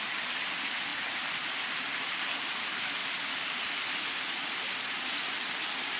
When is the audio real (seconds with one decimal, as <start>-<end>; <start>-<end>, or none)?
0.0-0.9; 1.5-6.0